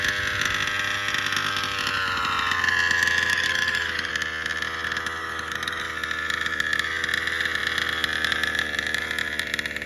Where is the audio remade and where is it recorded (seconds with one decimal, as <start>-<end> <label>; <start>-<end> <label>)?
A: 0.0-3.3 recorded; 3.3-4.1 remade; 4.1-5.2 recorded; 5.2-5.8 remade; 5.8-9.9 recorded